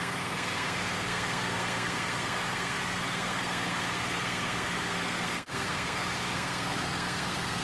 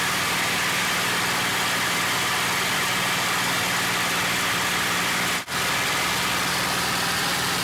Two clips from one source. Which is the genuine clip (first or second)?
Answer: second